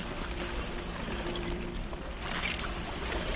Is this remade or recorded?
recorded